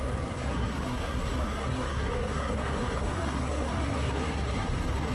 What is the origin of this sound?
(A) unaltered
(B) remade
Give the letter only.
B